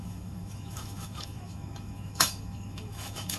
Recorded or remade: remade